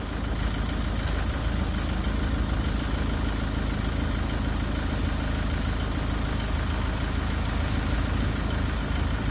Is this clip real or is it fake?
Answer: real